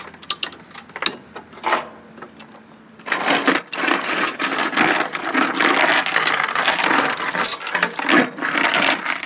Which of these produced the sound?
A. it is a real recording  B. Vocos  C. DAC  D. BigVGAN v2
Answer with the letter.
A